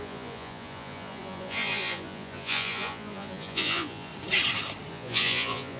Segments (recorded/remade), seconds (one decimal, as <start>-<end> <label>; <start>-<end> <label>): 0.0-4.1 remade; 4.1-4.9 recorded; 4.9-5.8 remade